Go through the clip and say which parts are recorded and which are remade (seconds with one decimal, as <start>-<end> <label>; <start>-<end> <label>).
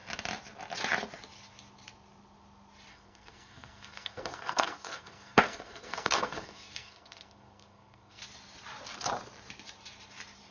0.0-2.9 recorded; 2.9-8.2 remade; 8.2-10.5 recorded